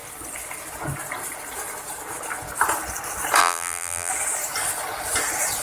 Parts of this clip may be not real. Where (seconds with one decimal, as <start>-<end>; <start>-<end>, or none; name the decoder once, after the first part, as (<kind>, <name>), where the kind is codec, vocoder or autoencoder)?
3.4-4.1 (vocoder, BigVGAN v2)

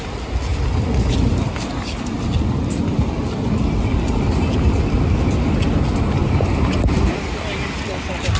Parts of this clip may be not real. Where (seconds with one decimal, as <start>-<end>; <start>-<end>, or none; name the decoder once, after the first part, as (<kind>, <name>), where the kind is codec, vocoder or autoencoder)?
none

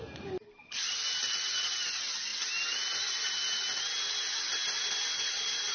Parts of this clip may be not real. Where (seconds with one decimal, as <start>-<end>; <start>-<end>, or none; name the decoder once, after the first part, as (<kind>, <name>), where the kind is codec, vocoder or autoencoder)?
none

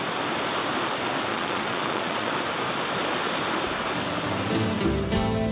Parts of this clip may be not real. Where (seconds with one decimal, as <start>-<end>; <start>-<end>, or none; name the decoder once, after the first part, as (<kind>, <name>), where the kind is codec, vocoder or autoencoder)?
1.3-2.3 (vocoder, Vocos)

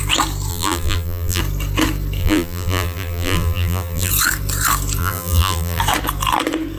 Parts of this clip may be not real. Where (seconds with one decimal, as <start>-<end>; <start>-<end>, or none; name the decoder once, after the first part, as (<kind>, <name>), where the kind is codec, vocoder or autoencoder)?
0.5-1.4 (vocoder, BigVGAN v2); 2.2-4.1; 5.0-5.8

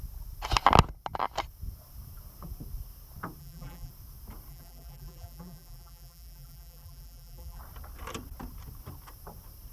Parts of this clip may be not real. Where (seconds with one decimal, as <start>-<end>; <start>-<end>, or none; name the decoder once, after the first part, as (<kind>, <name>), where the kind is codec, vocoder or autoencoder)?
3.4-3.9 (vocoder, BigVGAN v2); 4.5-7.6

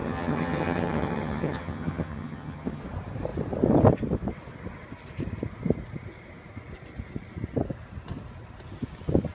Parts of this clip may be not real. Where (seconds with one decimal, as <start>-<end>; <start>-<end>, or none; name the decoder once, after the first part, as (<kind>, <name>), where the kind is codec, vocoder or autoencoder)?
0.0-2.8 (vocoder, HiFi-GAN)